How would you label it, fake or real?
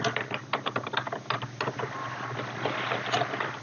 real